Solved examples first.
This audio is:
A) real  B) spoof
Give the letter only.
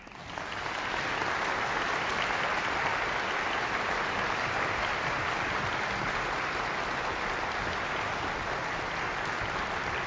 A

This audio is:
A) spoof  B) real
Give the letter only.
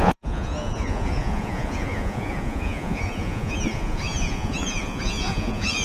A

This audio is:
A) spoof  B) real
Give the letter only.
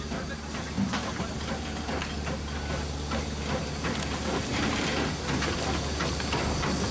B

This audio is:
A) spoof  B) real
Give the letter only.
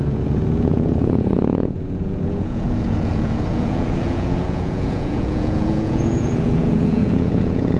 A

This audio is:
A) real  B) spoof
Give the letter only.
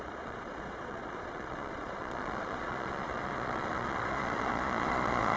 B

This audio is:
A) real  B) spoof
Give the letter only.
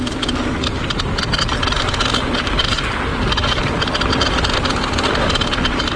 A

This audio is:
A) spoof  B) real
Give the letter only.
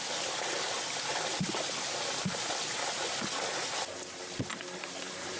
B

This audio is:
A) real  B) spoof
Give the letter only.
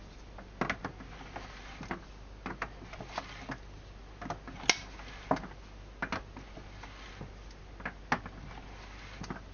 A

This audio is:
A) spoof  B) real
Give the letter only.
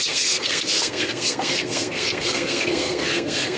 A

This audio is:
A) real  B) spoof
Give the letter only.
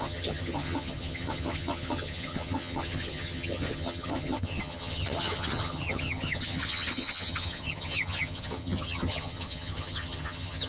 B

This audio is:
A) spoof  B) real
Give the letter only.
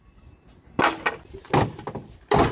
B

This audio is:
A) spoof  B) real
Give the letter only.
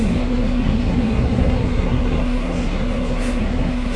A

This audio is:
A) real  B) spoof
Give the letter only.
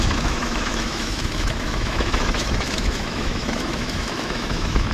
B